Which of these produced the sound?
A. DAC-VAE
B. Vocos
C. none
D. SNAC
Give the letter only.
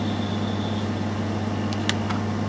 C